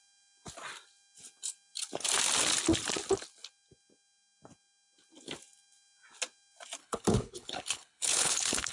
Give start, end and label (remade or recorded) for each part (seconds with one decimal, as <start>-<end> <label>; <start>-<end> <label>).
0.0-6.8 recorded; 6.8-8.7 remade